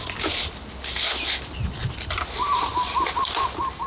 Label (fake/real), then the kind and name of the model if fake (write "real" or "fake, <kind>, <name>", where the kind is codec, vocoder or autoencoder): real